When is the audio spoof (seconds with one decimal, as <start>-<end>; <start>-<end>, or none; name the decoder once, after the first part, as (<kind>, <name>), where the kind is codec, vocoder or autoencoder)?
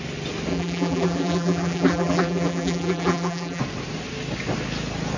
0.5-3.6 (vocoder, BigVGAN v2)